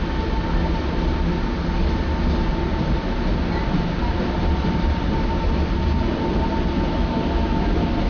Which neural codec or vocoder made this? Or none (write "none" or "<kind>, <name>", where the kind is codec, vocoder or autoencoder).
none